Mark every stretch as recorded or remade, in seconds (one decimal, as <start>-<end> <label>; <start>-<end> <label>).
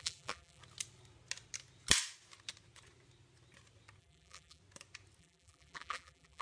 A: 0.0-0.6 remade; 0.6-4.0 recorded; 4.0-4.6 remade; 4.6-5.2 recorded; 5.2-6.4 remade